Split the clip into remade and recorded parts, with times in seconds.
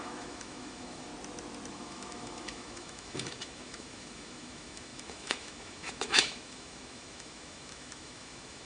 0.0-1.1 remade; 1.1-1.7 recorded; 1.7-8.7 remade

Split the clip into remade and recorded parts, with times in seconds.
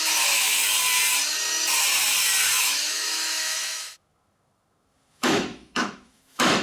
0.0-0.6 remade; 0.6-2.6 recorded; 2.6-6.6 remade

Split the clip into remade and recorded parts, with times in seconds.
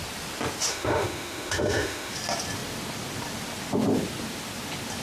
0.0-0.7 recorded; 0.7-2.1 remade; 2.1-5.0 recorded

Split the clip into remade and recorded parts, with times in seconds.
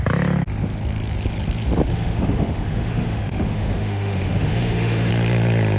0.0-1.9 recorded; 1.9-5.1 remade; 5.1-5.8 recorded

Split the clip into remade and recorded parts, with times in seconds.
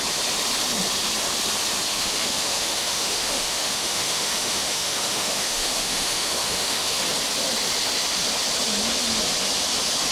0.0-1.9 recorded; 1.9-7.0 remade; 7.0-10.1 recorded